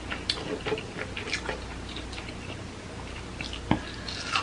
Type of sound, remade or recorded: recorded